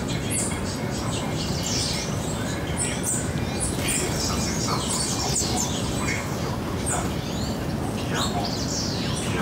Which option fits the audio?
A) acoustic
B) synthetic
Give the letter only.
A